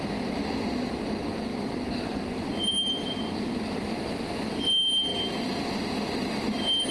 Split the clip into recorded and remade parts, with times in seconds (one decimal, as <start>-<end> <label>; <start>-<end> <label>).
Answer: 0.0-1.5 recorded; 1.5-3.8 remade; 3.8-6.9 recorded